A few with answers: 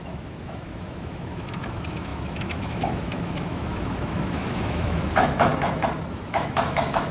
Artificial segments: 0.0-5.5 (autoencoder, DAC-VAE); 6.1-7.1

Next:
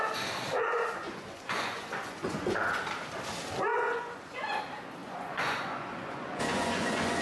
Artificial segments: 0.6-2.8 (vocoder, Vocos); 3.7-4.6; 5.0-7.2

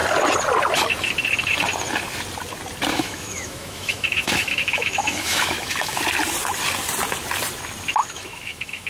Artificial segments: 2.9-6.0 (autoencoder, DAC-VAE); 8.0-8.9

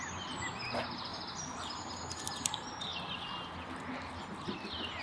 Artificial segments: none

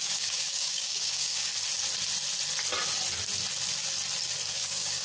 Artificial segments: 0.0-1.5 (codec, DAC); 4.5-5.0

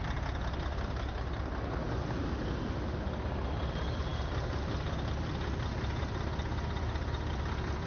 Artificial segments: none